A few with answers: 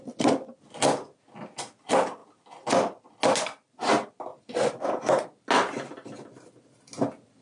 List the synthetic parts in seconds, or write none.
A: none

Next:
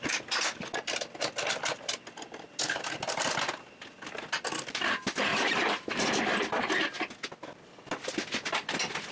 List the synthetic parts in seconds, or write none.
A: none

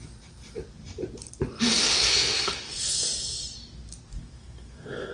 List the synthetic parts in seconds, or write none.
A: 1.9-2.5 (autoencoder, DAC-VAE); 4.1-5.1

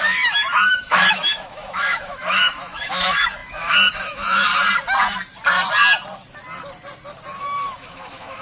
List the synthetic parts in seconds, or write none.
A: 0.0-4.5 (autoencoder, DAC-VAE); 7.4-8.4

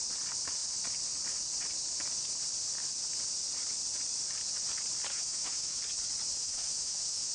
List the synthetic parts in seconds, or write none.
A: 5.1-5.8 (autoencoder, DAC-VAE); 6.4-7.3